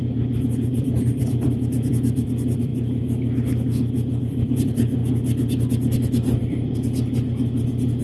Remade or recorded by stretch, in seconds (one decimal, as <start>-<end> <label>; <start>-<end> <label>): 0.0-2.7 remade; 2.7-4.2 recorded; 4.2-5.0 remade; 5.0-6.4 recorded; 6.4-8.0 remade